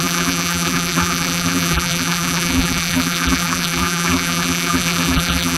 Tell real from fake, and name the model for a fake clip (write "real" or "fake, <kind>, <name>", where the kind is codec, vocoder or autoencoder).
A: fake, vocoder, BigVGAN v2